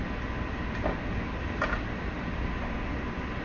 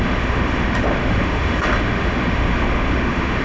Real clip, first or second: first